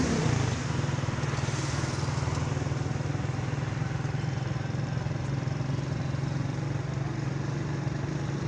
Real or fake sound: real